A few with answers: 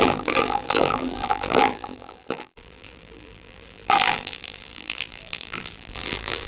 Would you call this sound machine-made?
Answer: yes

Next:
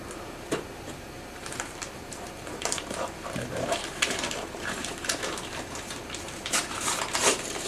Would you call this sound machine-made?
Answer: yes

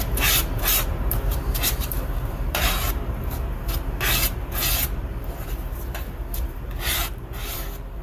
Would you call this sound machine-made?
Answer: yes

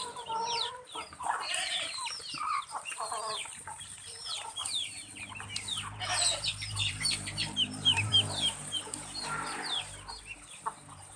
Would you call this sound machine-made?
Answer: yes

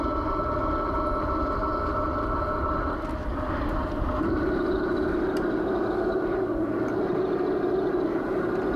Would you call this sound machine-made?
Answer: no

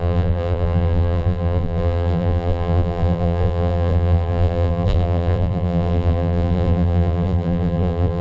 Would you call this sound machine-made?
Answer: yes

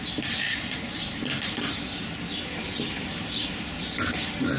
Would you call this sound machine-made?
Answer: no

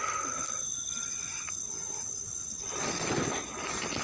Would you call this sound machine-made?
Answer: no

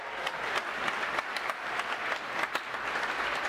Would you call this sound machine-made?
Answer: yes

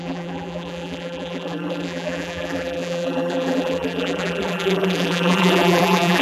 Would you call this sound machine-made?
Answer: yes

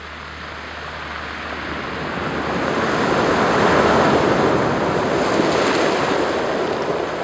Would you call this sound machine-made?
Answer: no